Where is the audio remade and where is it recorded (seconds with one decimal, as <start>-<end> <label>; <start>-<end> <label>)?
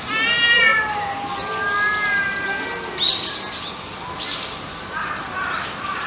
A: 0.0-6.1 recorded